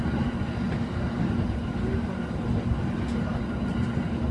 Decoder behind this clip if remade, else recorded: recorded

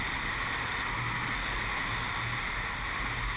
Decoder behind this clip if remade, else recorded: recorded